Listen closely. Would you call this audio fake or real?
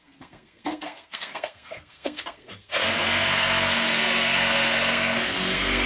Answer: fake